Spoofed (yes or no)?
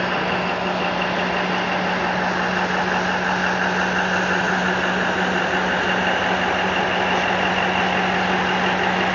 no